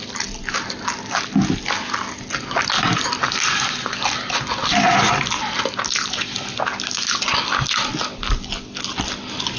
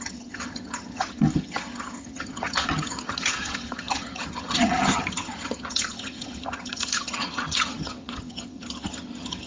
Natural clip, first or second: first